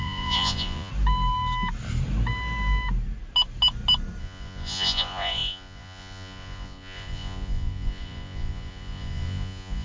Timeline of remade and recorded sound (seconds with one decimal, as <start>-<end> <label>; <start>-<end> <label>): 0.0-0.9 remade; 0.9-4.2 recorded; 4.2-9.8 remade